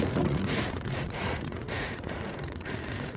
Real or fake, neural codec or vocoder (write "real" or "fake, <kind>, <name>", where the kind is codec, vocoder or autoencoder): fake, vocoder, Vocos